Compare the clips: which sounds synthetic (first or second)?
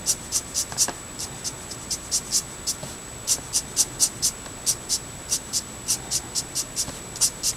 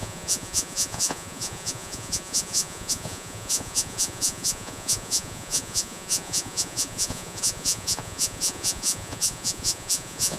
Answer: second